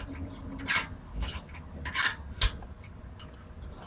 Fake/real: real